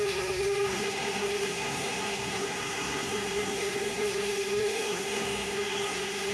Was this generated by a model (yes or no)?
yes